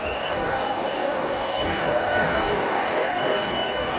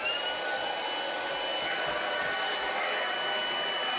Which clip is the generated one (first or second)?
first